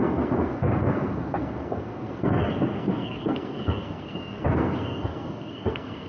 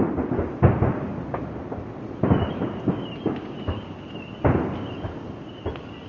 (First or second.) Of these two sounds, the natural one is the second